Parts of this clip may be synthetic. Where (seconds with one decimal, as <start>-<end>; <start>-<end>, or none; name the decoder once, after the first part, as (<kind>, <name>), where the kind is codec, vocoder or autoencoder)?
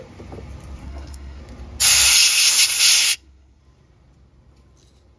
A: 0.8-1.4 (codec, SNAC); 3.0-3.6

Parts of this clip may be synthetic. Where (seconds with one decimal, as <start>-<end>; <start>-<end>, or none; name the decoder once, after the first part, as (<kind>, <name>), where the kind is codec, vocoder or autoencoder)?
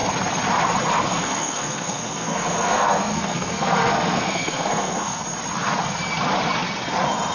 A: 1.1-5.2 (codec, SNAC)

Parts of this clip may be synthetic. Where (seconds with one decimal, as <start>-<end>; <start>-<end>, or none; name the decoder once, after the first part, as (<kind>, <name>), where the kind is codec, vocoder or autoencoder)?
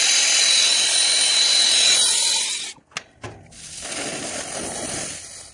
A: none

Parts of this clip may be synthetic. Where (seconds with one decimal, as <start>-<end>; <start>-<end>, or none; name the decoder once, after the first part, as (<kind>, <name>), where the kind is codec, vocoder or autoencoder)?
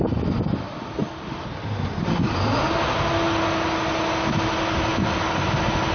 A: none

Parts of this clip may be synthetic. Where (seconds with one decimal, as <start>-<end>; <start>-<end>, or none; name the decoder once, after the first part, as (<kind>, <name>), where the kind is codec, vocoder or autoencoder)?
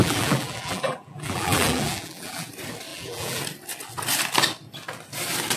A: 0.0-2.5 (vocoder, BigVGAN v2); 2.9-3.4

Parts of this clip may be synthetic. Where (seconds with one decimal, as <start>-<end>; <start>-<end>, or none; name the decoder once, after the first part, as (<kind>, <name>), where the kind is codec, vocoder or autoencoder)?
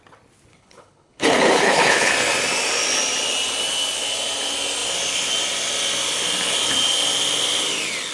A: 0.5-2.1 (codec, HILCodec)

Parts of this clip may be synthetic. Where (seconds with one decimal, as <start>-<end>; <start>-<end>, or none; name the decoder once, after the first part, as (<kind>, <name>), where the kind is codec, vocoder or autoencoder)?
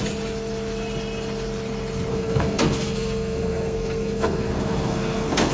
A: 2.1-5.5 (codec, SNAC)